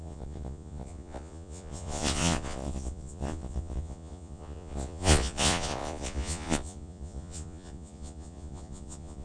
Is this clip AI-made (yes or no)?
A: yes